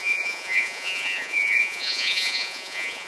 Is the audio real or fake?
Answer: fake